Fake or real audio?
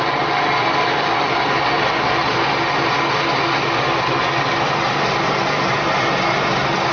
real